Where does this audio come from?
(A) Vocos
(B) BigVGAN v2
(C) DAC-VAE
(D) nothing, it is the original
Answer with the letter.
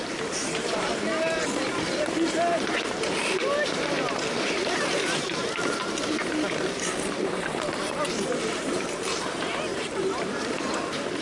B